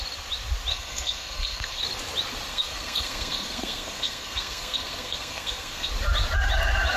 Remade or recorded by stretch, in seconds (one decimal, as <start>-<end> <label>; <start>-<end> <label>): 0.0-0.7 recorded; 0.7-1.8 remade; 1.8-2.5 recorded; 2.5-5.9 remade; 5.9-7.0 recorded